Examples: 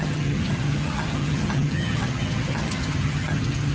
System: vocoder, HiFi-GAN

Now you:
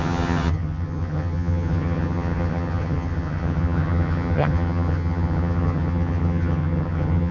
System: vocoder, HiFi-GAN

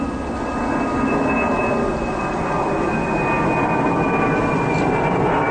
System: none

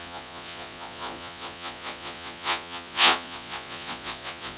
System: vocoder, Vocos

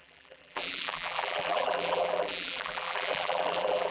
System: vocoder, BigVGAN v2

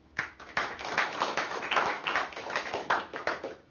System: autoencoder, DAC-VAE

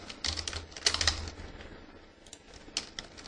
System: none